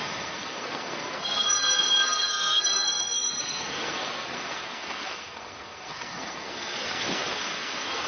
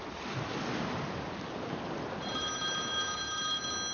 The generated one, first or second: first